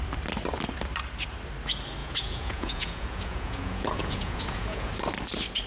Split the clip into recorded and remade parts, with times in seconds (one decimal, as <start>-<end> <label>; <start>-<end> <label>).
0.0-2.0 recorded; 2.0-4.9 remade; 4.9-5.7 recorded